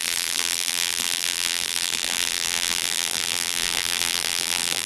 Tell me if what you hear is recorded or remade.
remade